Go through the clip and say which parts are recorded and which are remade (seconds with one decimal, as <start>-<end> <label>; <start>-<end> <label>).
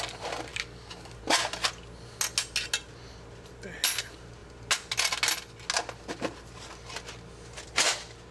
0.0-0.5 recorded; 0.5-1.2 remade; 1.2-8.3 recorded